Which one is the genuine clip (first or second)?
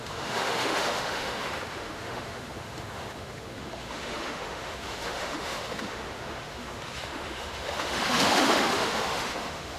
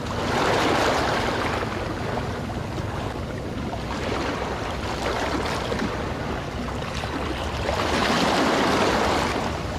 second